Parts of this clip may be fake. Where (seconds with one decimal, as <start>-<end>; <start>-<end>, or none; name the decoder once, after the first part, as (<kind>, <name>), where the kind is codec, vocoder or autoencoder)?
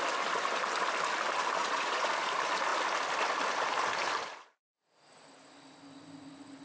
1.6-2.1 (vocoder, Vocos)